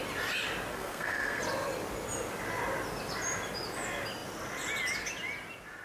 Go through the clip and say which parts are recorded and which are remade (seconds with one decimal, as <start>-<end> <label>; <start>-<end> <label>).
0.0-0.7 recorded; 0.7-1.4 remade; 1.4-5.8 recorded